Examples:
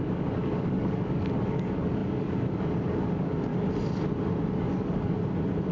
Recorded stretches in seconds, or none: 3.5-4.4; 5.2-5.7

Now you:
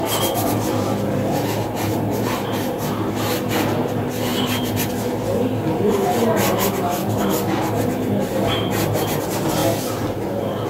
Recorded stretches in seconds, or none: 0.0-7.0; 7.6-10.7

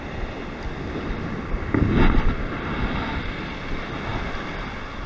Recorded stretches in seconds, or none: 0.0-5.1

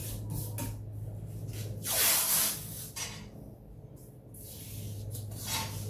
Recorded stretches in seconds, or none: 0.0-5.9

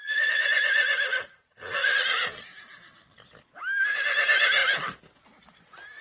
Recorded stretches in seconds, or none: 2.3-6.0

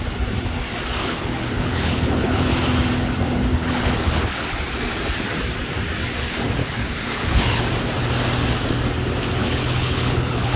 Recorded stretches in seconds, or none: 0.0-1.0; 2.5-3.5; 4.6-6.6; 7.6-9.4